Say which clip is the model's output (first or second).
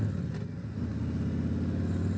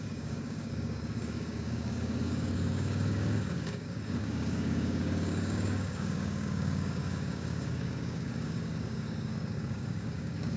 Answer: second